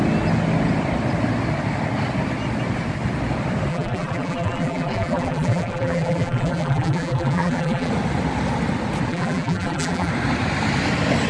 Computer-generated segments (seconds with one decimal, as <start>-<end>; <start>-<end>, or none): 3.7-7.9; 9.1-10.1